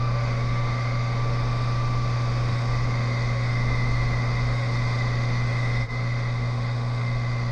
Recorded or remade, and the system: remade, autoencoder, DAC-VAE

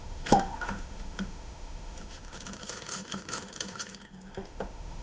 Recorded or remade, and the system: remade, autoencoder, DAC-VAE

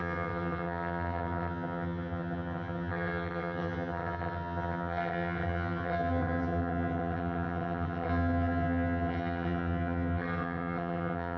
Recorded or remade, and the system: remade, vocoder, HiFi-GAN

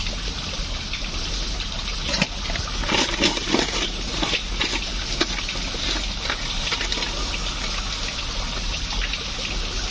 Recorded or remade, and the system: recorded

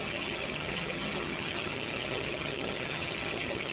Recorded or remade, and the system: remade, vocoder, HiFi-GAN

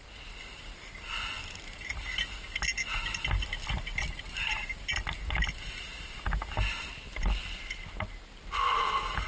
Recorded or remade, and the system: recorded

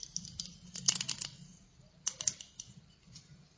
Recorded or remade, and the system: recorded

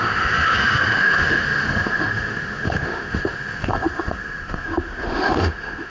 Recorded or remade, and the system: remade, autoencoder, DAC-VAE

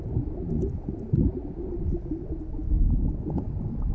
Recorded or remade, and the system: recorded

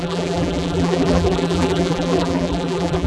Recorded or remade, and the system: remade, vocoder, BigVGAN v2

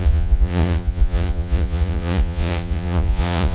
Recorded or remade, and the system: remade, vocoder, Vocos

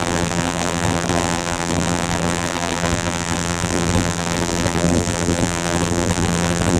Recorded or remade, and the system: remade, vocoder, BigVGAN v2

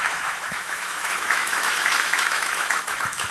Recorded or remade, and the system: remade, autoencoder, DAC-VAE